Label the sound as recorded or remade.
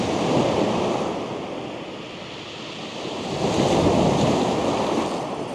recorded